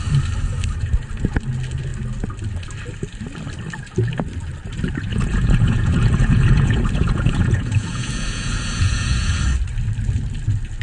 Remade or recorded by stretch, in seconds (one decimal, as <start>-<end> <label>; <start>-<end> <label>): 0.0-5.1 recorded; 5.1-9.4 remade; 9.4-10.8 recorded